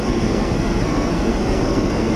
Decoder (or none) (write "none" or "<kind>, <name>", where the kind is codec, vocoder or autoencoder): codec, SNAC